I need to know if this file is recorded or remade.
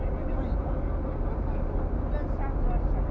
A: recorded